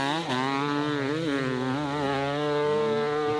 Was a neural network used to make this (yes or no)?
no